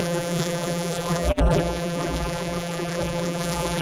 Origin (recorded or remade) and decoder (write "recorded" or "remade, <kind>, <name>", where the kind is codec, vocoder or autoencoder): remade, vocoder, BigVGAN v2